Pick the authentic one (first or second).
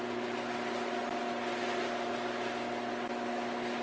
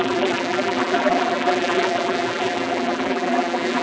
first